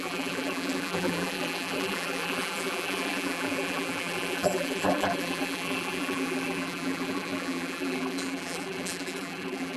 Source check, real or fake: fake